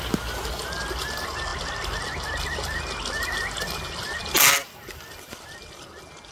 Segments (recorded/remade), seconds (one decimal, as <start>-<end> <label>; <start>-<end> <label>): 0.0-6.3 recorded